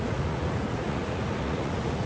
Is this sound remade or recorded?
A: remade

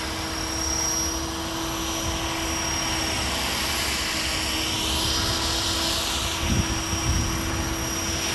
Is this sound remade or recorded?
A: recorded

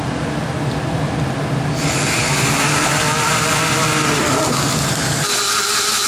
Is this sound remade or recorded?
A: recorded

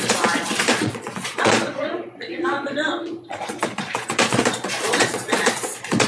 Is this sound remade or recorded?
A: remade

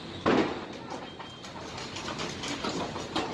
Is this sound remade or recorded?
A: recorded